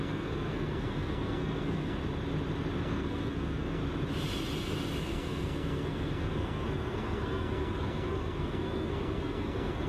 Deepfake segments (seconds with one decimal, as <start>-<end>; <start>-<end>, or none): 0.0-2.0; 2.8-3.8; 5.0-9.9